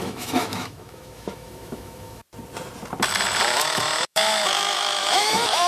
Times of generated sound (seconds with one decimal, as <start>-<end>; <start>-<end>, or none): 0.0-2.2; 3.5-5.7